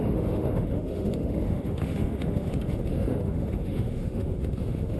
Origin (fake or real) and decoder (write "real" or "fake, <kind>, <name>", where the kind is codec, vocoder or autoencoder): fake, autoencoder, DAC-VAE